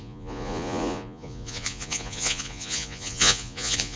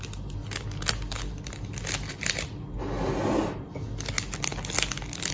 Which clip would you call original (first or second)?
second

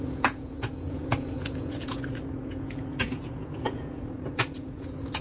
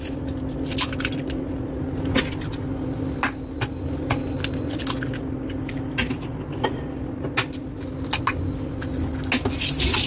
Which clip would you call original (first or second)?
second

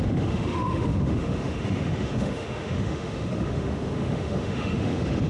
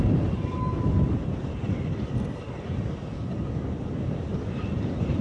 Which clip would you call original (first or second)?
second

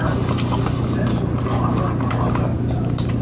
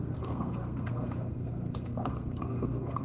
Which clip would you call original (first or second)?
first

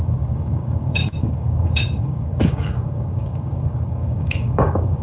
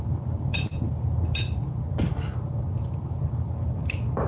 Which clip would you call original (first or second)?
second